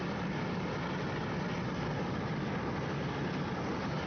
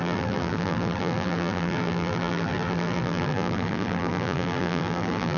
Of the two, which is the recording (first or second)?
first